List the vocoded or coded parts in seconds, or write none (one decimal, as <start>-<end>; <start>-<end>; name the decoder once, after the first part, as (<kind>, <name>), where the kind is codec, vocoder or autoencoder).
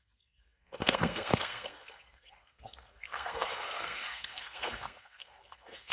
0.0-5.9 (codec, SNAC)